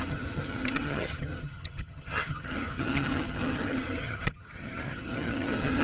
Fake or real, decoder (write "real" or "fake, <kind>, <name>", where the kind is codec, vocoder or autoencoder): fake, vocoder, HiFi-GAN